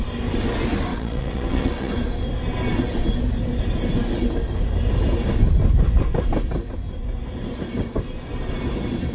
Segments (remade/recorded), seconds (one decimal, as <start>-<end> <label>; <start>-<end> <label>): 0.0-0.9 recorded; 0.9-1.9 remade; 1.9-9.1 recorded

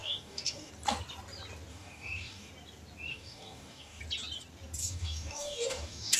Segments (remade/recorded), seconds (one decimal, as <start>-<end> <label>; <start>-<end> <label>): 0.0-0.7 remade; 0.7-1.7 recorded; 1.7-2.5 remade; 2.5-3.1 recorded; 3.1-4.0 remade; 4.0-4.8 recorded; 4.8-6.2 remade

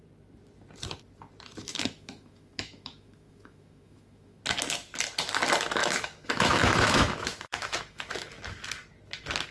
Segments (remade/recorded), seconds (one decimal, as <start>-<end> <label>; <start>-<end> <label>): 0.0-1.6 recorded; 1.6-4.4 remade; 4.4-5.8 recorded; 5.8-8.3 remade; 8.3-9.5 recorded